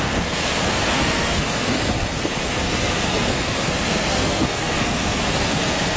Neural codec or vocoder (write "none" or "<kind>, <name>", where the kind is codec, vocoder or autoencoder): codec, SNAC